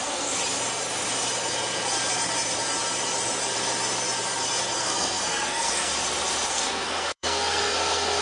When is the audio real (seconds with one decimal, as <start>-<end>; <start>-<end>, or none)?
0.4-4.8; 5.9-6.5

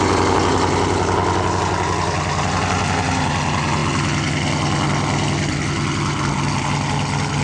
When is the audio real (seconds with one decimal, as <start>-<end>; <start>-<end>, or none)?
0.0-7.4

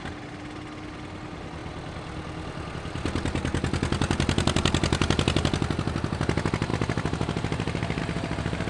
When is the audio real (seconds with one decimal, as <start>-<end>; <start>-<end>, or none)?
0.0-8.7

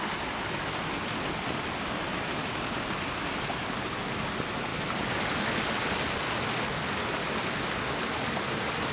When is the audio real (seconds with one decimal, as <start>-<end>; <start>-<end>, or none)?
0.0-8.9